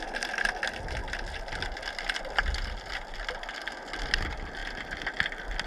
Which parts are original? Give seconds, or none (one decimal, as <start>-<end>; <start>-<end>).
0.0-5.7